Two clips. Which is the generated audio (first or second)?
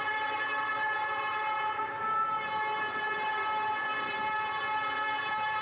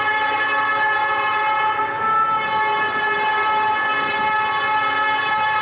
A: first